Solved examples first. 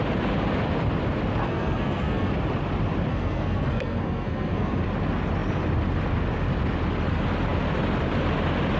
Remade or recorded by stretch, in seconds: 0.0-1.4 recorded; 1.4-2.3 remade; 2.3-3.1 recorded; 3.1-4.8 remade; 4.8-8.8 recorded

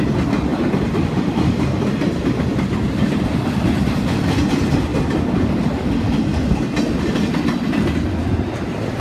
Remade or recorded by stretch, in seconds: 0.0-9.0 recorded

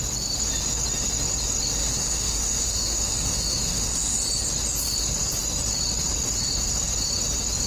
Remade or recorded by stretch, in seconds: 0.0-1.8 recorded; 1.8-4.2 remade; 4.2-7.7 recorded